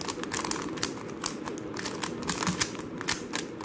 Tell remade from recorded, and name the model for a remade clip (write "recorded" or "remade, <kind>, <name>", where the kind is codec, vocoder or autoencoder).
recorded